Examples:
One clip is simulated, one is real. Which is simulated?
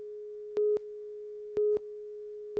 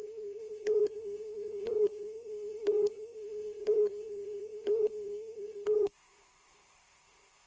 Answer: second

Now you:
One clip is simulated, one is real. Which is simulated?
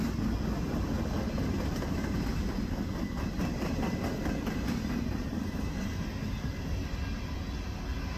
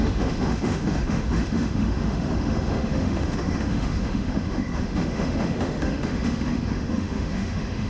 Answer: second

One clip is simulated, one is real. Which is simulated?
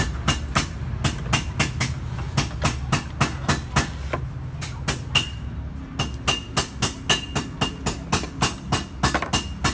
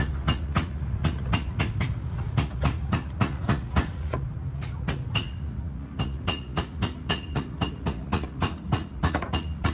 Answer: second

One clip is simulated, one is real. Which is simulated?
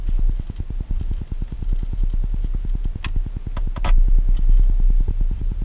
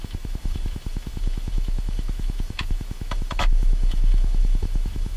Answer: second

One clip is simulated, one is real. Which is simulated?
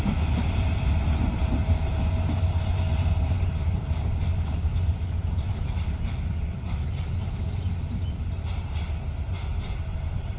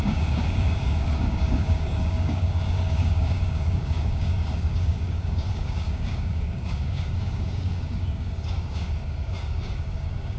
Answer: second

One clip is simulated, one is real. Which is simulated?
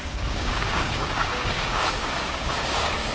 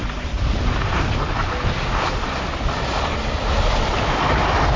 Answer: first